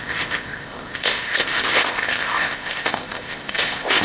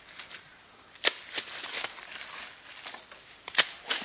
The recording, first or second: second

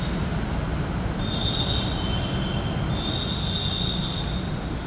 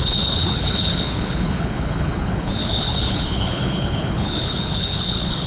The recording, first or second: first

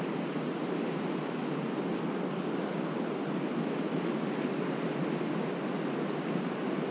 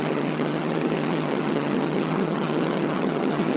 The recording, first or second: first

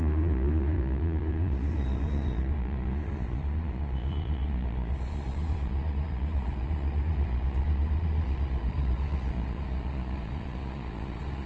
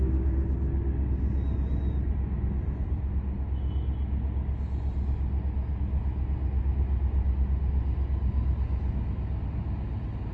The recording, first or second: second